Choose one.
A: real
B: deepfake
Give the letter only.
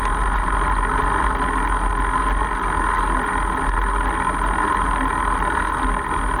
A